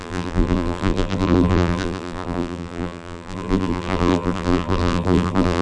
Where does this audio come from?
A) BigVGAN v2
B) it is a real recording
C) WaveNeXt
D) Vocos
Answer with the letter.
A